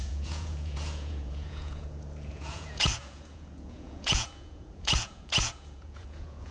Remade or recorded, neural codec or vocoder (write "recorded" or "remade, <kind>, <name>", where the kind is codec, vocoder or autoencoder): remade, vocoder, Vocos